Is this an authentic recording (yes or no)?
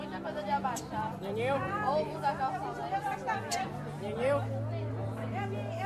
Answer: yes